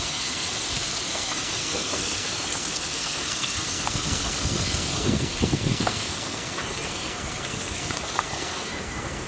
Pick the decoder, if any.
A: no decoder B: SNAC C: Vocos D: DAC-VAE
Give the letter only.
B